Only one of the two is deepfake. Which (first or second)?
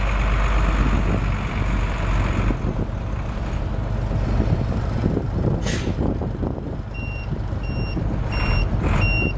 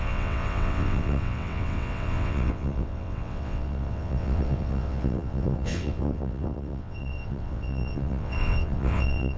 second